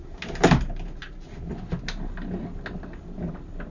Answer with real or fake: real